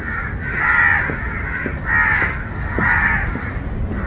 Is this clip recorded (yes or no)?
yes